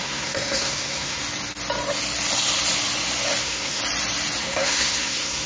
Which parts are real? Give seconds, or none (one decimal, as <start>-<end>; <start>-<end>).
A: 1.2-3.4; 3.8-4.4